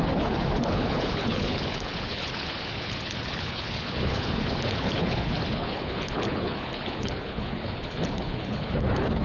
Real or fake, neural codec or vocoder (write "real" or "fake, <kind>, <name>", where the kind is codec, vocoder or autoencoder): fake, codec, HILCodec